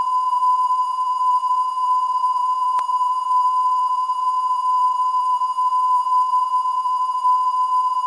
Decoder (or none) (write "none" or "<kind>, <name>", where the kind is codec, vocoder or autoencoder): vocoder, Vocos